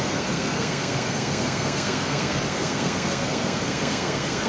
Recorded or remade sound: remade